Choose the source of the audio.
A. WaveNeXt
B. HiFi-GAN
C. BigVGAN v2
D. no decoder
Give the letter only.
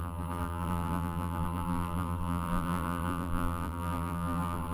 C